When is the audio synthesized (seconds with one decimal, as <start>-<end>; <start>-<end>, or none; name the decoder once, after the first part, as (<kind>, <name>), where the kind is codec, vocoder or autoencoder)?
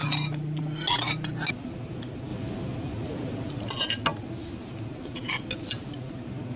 none